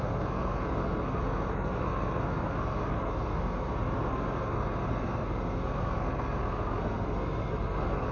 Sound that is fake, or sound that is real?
fake